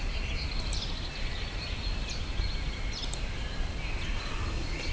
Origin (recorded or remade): recorded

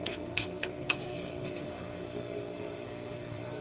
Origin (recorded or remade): remade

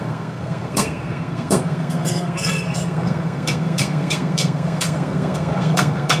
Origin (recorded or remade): remade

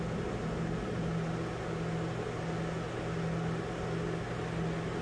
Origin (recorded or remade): recorded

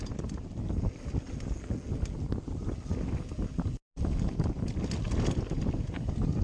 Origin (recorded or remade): recorded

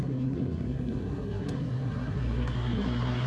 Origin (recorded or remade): remade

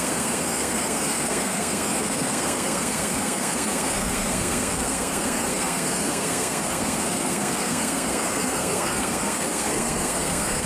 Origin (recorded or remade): remade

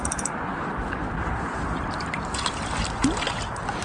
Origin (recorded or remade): recorded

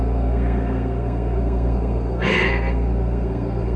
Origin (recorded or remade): remade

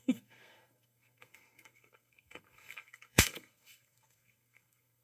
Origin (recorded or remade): remade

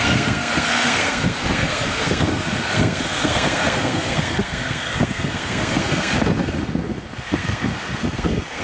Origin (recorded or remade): remade